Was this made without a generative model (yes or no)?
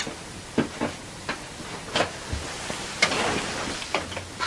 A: yes